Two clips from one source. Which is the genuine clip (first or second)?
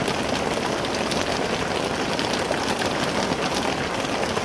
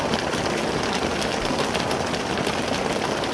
first